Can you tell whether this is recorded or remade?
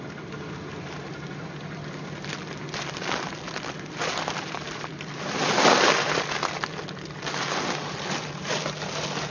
recorded